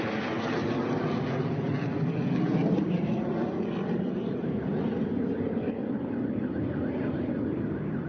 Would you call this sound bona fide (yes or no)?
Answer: yes